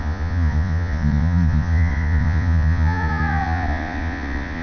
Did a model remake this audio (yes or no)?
yes